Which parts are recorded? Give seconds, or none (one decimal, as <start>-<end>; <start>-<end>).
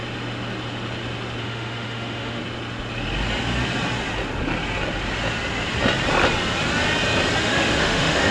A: 0.0-1.4; 2.4-7.4